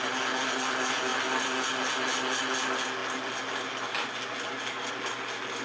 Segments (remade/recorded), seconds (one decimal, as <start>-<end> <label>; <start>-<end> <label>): 0.0-5.6 recorded